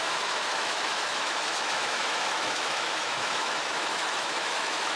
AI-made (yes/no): yes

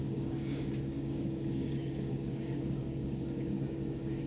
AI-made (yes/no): yes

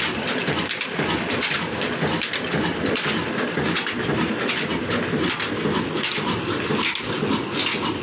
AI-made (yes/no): no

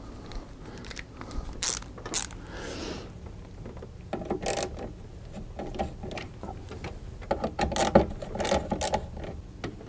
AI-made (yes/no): no